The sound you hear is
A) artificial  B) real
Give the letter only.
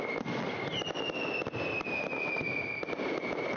B